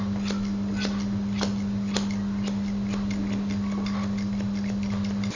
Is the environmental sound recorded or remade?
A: recorded